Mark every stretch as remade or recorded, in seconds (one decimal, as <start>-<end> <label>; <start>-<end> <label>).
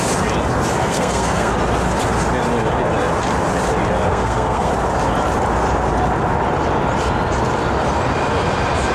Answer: 0.0-0.8 recorded; 0.8-1.5 remade; 1.5-4.1 recorded; 4.1-4.7 remade; 4.7-8.9 recorded